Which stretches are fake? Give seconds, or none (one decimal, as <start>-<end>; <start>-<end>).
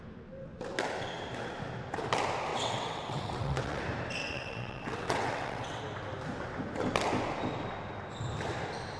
2.5-3.8; 4.2-5.8